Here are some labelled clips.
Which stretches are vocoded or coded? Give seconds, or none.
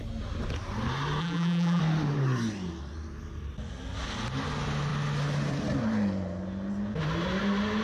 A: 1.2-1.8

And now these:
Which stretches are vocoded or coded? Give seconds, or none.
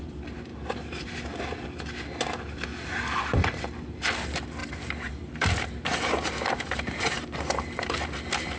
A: 0.0-0.5; 3.2-8.6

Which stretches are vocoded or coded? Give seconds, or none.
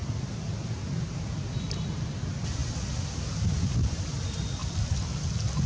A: none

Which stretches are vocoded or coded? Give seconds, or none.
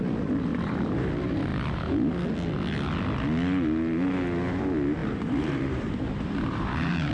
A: 0.5-1.1; 5.0-7.1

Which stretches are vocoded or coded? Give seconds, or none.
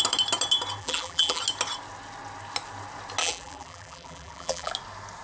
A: 0.8-1.4; 3.2-4.7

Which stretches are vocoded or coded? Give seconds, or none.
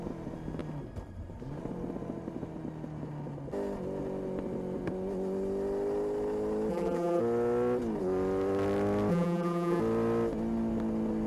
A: 6.7-7.2; 9.1-9.8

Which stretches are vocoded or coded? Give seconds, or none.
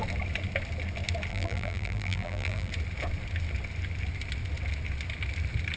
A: 1.3-2.7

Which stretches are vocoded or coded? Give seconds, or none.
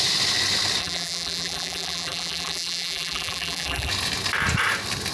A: 0.8-3.9